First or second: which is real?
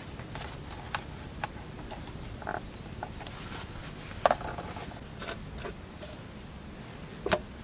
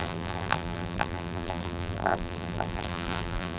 first